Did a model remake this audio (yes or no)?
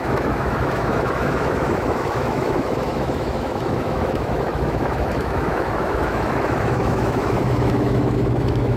yes